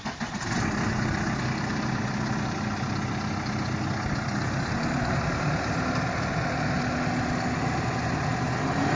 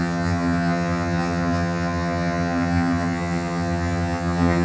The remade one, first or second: second